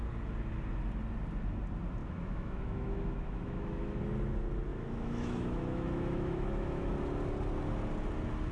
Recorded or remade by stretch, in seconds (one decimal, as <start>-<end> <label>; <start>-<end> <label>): 0.0-2.0 recorded; 2.0-4.0 remade; 4.0-4.7 recorded; 4.7-6.9 remade; 6.9-8.5 recorded